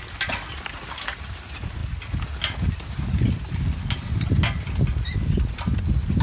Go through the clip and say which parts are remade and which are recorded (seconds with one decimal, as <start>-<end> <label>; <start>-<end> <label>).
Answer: 0.0-6.2 recorded